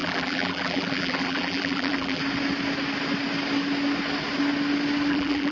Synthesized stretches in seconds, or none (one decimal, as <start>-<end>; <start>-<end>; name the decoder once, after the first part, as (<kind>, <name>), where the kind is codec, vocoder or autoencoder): 0.0-2.2 (vocoder, BigVGAN v2); 5.1-5.5

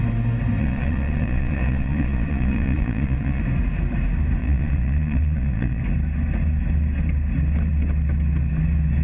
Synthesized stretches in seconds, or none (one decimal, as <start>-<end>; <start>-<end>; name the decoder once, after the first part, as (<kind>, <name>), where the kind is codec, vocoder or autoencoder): 0.6-3.4 (vocoder, Vocos); 4.4-5.8